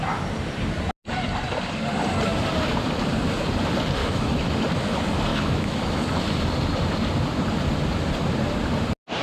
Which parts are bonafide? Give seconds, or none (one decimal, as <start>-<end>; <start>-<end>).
0.0-4.0; 4.5-5.3; 6.0-9.2